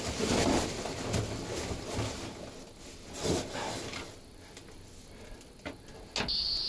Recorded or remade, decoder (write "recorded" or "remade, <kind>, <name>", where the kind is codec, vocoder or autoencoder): recorded